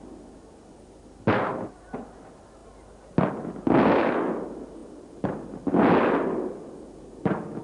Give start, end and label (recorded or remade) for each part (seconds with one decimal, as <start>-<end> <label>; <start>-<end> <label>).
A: 0.0-7.6 recorded